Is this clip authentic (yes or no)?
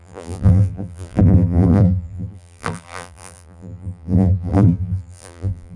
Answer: no